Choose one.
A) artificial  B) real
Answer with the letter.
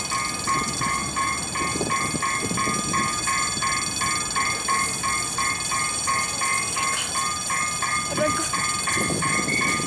B